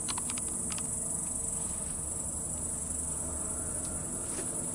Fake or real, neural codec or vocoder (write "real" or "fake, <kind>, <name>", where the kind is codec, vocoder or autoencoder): real